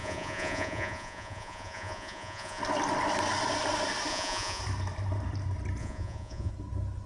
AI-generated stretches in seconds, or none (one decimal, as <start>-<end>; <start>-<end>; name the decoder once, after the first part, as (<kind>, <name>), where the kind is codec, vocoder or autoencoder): 0.0-2.6 (vocoder, Vocos); 4.1-4.6; 5.8-6.5